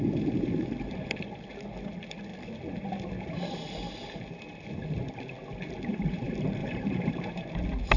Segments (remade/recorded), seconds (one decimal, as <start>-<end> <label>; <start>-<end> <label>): 0.0-6.6 recorded; 6.6-7.5 remade; 7.5-8.0 recorded